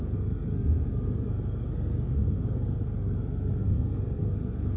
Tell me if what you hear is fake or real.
fake